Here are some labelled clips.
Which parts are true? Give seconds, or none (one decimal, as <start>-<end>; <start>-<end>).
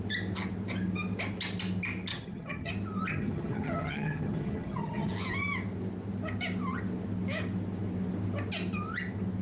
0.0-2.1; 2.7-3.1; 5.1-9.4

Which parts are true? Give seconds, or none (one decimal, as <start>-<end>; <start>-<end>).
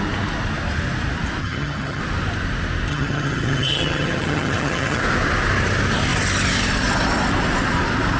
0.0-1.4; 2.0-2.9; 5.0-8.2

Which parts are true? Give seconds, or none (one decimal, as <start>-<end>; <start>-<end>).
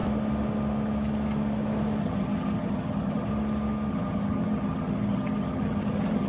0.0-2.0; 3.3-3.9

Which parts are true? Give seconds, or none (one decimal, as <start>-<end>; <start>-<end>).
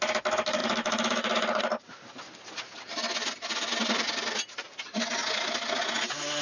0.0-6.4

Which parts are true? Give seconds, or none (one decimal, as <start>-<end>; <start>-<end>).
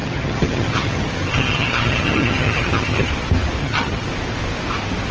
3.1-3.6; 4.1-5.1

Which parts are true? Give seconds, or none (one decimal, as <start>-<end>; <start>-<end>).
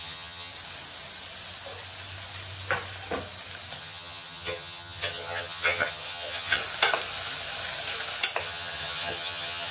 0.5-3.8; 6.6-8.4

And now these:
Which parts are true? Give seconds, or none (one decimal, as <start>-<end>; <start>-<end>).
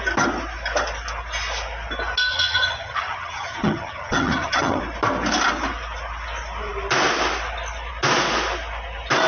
0.0-2.3; 4.8-9.3